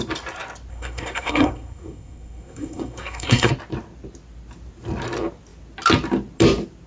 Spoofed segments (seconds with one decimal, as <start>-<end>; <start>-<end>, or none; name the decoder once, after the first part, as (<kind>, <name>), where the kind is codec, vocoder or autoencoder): 0.7-3.5 (codec, SNAC)